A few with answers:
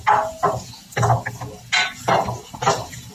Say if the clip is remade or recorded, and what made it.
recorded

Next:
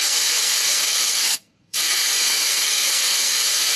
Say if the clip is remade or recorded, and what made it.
remade, codec, SNAC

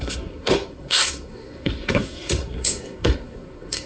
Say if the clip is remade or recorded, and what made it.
remade, codec, SNAC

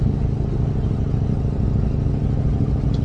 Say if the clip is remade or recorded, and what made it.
recorded